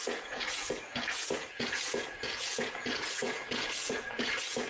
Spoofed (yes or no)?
yes